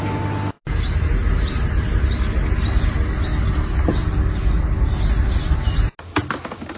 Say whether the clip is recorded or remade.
recorded